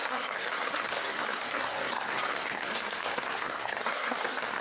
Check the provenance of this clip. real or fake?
fake